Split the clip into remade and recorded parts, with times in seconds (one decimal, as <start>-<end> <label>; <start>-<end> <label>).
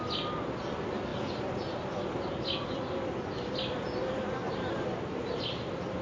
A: 0.0-6.0 recorded